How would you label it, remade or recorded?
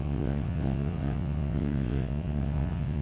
remade